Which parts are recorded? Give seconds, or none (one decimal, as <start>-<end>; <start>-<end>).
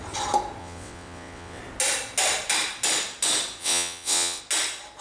0.0-0.6; 1.6-3.6; 4.4-5.0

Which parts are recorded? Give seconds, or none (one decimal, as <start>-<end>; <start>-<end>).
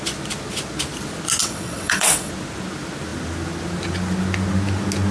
0.0-1.4; 2.3-5.1